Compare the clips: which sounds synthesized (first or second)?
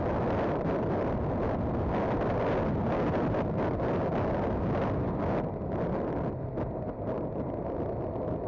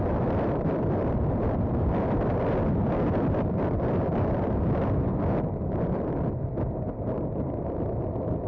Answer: second